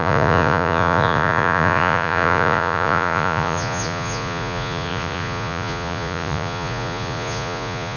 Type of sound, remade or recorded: remade